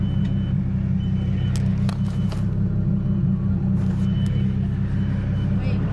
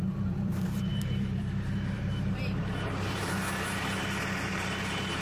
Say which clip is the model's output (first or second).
second